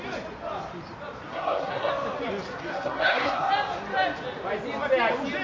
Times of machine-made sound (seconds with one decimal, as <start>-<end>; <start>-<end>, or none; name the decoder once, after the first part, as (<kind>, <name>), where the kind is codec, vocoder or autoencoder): 1.3-1.9 (codec, SNAC); 2.7-3.5